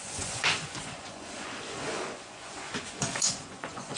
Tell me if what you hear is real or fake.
fake